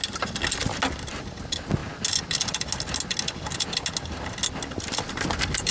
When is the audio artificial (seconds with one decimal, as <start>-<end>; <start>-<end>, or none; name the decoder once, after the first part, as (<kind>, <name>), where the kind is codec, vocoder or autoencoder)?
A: none